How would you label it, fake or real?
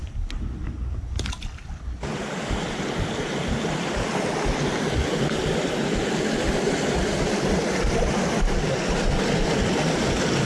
real